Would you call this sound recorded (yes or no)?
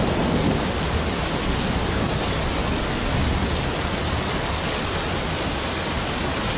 yes